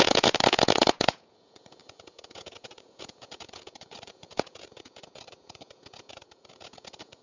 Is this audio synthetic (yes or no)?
yes